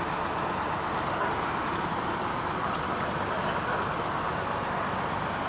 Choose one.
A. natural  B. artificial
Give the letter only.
A